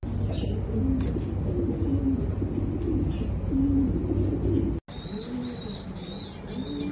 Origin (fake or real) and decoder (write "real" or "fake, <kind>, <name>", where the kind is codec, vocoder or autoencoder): real